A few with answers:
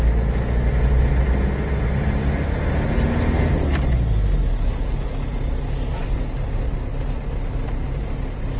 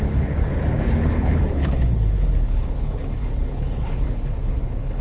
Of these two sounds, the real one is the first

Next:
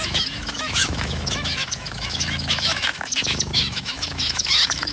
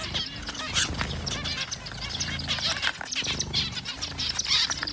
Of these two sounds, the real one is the second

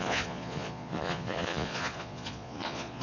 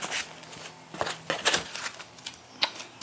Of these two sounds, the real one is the second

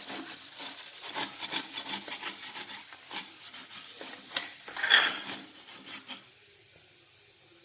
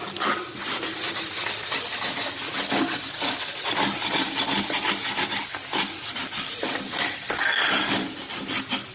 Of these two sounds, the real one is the second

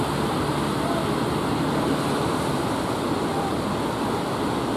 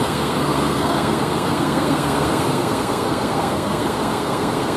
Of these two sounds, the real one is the first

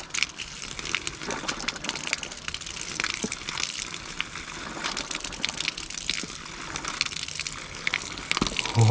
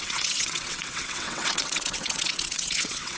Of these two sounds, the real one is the first